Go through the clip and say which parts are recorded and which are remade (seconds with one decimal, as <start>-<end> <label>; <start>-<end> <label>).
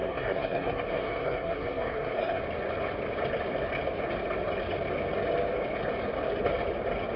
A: 0.0-2.4 remade; 2.4-7.2 recorded